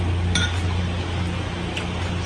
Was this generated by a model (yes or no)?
no